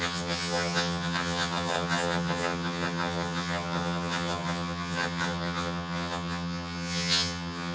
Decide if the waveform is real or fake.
fake